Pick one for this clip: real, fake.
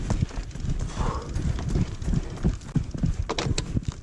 real